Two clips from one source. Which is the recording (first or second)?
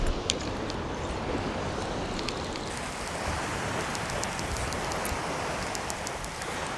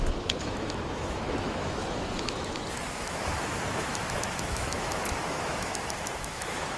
first